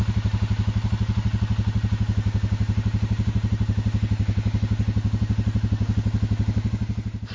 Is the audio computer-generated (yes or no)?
no